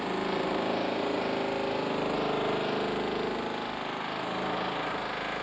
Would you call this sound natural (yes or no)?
yes